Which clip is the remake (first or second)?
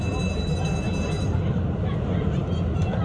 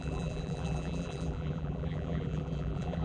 second